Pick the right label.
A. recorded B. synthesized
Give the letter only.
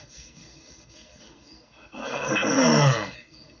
B